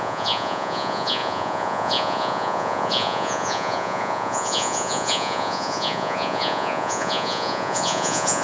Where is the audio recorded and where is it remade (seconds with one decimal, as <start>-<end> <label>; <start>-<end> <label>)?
0.0-8.4 remade